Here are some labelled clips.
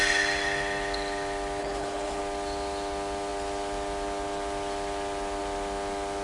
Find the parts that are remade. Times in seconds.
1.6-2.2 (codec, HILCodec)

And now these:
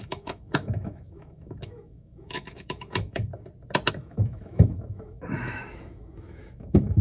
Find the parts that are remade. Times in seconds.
0.0-3.3 (autoencoder, DAC-VAE); 3.9-7.0

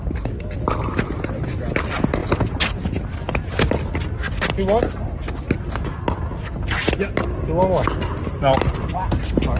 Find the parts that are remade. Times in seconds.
none

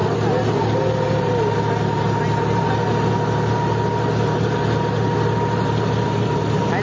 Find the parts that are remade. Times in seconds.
none

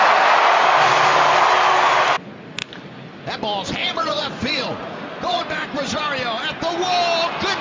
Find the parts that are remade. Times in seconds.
3.8-6.0 (vocoder, Vocos)